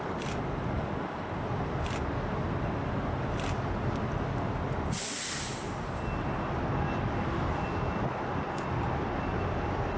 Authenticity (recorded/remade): recorded